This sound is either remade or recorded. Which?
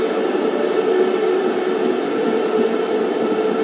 recorded